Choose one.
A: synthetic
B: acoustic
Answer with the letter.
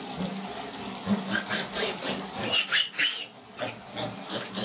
B